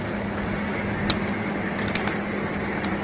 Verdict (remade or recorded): recorded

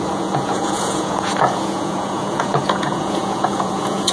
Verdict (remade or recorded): remade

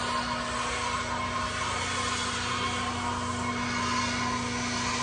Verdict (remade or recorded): recorded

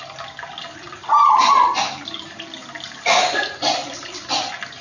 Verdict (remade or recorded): recorded